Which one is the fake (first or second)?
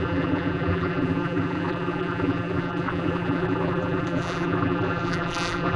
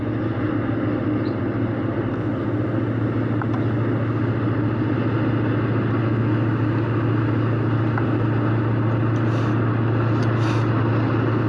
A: first